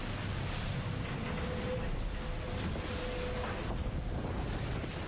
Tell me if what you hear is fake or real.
real